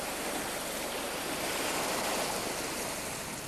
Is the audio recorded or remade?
recorded